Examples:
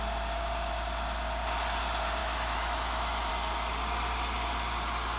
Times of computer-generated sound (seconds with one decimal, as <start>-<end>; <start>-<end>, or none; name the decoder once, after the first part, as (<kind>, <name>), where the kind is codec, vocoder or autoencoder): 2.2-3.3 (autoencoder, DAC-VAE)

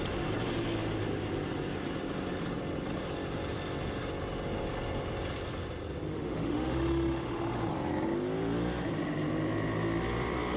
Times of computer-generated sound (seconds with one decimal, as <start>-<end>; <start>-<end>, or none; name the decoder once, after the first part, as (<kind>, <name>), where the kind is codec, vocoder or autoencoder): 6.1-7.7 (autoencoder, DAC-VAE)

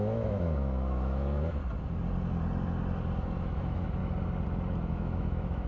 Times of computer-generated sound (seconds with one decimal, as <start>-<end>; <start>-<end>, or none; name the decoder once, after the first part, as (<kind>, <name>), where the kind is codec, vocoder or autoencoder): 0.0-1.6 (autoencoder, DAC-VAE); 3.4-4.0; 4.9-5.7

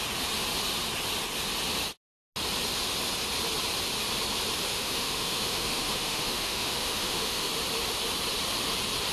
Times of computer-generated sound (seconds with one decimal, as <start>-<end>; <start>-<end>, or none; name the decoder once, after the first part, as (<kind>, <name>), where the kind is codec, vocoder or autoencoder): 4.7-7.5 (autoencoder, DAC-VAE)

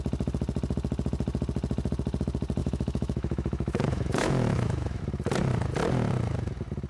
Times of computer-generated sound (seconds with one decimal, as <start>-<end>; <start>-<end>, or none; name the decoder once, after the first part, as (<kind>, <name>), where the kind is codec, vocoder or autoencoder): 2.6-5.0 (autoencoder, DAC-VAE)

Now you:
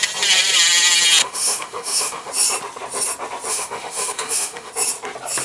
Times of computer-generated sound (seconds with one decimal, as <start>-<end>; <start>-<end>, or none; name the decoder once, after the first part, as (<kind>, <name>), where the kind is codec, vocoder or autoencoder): 1.2-2.3 (autoencoder, DAC-VAE); 3.5-4.7